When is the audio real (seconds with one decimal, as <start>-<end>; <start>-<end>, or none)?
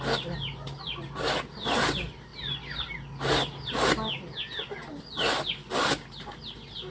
0.0-6.9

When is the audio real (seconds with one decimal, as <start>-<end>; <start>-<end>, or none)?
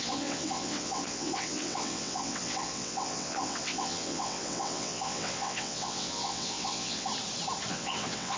7.1-7.7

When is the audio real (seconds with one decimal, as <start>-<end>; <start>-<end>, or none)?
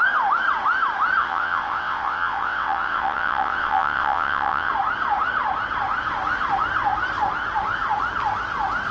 0.0-1.2; 4.7-8.9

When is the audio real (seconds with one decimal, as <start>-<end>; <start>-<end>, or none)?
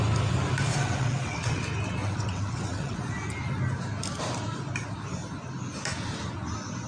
0.0-0.7; 1.6-2.0; 3.0-6.9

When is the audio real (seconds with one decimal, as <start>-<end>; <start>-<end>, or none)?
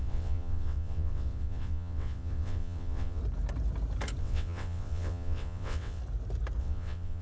3.2-4.2; 6.0-6.6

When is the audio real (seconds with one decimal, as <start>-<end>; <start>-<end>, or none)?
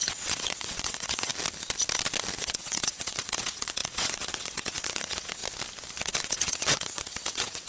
1.3-2.4; 5.4-6.0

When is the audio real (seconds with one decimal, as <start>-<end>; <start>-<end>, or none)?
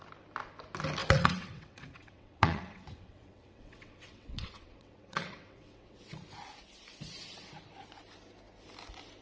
0.0-1.0; 6.1-9.2